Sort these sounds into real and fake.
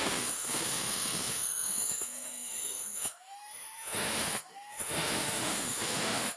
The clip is fake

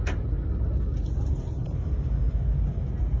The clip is real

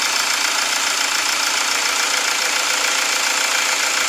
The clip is real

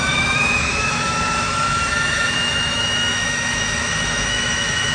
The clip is fake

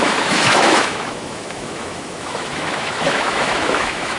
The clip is fake